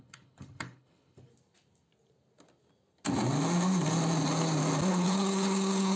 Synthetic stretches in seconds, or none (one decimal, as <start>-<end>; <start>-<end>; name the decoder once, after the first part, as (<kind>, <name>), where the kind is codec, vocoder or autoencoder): 0.0-1.3 (codec, HILCodec); 4.9-6.0